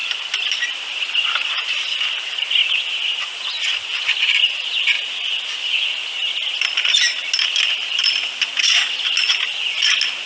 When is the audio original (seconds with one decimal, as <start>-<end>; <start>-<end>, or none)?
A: 0.7-7.5; 8.6-10.3